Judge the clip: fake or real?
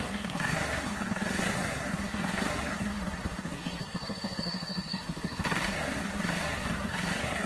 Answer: fake